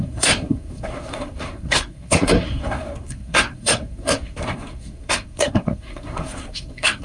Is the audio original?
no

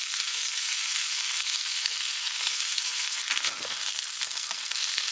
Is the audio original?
no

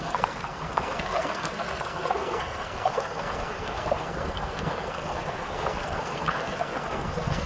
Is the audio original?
no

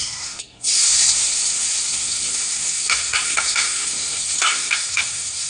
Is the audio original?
no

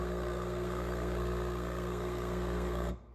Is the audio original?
no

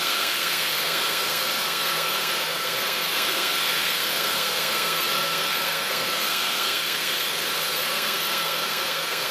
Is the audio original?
no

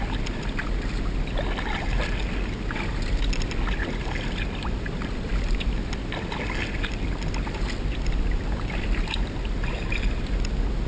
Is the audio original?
yes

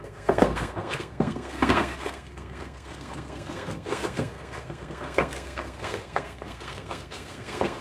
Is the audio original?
no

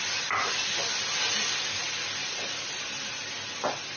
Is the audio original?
yes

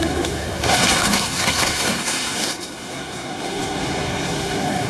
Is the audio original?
no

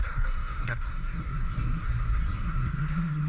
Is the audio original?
no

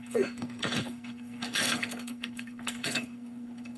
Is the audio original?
no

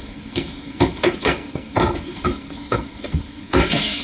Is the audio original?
no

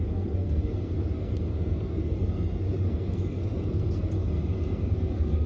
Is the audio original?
no